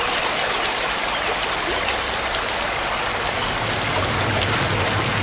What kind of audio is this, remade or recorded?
recorded